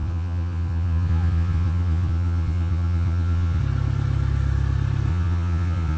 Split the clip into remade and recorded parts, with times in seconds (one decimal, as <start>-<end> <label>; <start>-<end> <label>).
0.0-3.6 remade; 3.6-5.1 recorded; 5.1-6.0 remade